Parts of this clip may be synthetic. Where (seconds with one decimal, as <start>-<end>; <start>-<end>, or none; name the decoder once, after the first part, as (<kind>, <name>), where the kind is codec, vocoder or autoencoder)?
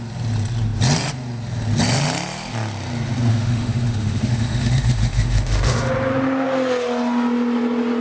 3.3-5.9 (autoencoder, DAC-VAE)